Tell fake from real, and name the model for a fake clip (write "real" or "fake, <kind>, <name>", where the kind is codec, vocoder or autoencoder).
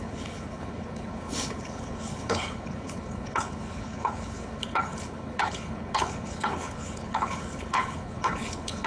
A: fake, codec, HILCodec